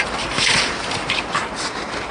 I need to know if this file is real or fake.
real